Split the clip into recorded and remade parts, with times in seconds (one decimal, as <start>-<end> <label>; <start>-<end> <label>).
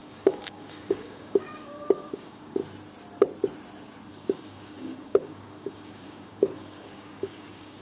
0.0-2.6 remade; 2.6-4.1 recorded; 4.1-7.8 remade